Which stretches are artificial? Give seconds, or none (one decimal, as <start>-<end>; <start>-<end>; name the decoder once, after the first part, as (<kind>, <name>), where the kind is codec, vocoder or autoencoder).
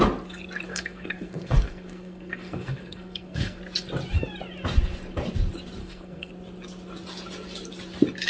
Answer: 0.7-3.6 (codec, SNAC); 5.8-6.3